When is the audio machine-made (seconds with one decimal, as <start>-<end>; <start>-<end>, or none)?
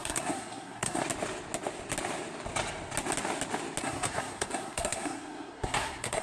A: 0.0-1.0; 3.8-6.2